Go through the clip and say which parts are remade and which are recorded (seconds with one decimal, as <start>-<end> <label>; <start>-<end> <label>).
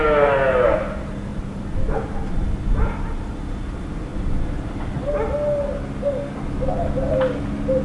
0.0-1.3 recorded; 1.3-2.0 remade; 2.0-4.1 recorded; 4.1-5.1 remade; 5.1-7.8 recorded